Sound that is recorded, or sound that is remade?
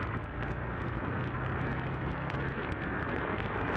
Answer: remade